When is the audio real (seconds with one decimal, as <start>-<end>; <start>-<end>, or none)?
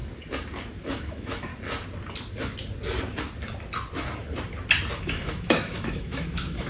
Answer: 0.0-1.0; 1.5-5.0